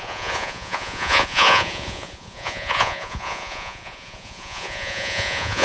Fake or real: fake